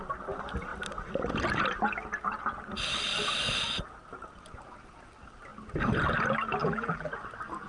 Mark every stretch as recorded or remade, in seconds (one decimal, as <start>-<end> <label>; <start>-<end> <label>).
0.0-6.6 recorded; 6.6-7.1 remade; 7.1-7.7 recorded